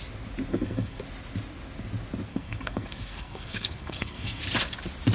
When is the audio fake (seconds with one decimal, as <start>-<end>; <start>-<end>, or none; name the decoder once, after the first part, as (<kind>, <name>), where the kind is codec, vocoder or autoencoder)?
0.5-1.0 (codec, SNAC); 2.3-4.4